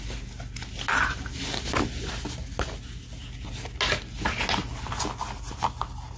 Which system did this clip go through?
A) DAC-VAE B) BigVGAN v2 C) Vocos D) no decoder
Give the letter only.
D